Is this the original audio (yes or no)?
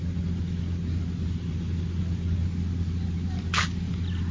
yes